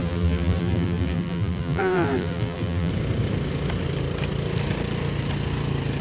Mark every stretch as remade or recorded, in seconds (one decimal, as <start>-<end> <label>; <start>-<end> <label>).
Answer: 0.0-2.9 remade; 2.9-6.0 recorded